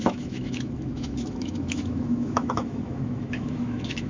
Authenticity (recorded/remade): remade